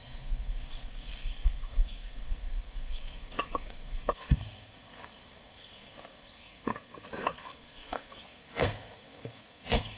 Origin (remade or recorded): remade